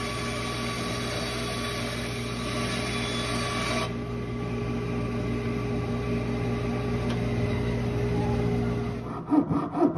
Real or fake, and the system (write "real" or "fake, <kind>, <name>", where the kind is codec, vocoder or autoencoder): real